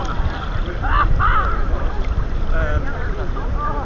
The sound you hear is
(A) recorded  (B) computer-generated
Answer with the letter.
A